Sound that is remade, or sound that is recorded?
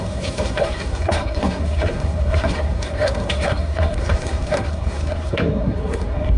remade